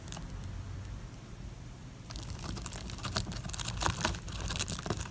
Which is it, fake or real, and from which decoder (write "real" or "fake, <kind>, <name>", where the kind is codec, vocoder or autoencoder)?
fake, vocoder, BigVGAN v2